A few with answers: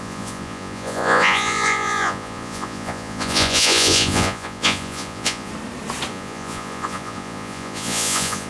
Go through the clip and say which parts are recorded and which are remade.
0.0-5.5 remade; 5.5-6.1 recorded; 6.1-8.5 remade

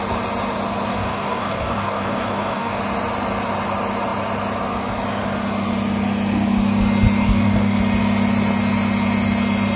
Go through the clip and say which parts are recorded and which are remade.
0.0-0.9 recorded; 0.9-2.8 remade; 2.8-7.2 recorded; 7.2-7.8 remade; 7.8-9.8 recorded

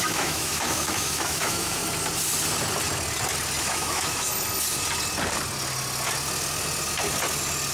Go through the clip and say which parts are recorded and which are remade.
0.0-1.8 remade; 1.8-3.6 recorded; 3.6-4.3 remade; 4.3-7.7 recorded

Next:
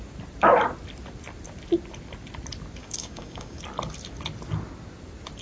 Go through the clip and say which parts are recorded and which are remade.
0.0-2.8 recorded; 2.8-3.6 remade; 3.6-5.4 recorded

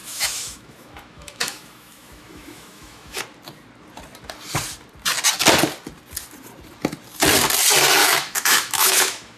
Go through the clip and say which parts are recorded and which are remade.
0.0-3.2 remade; 3.2-8.0 recorded; 8.0-9.4 remade